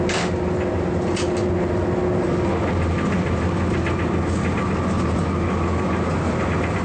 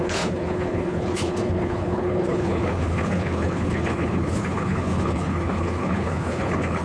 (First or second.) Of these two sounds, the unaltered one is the first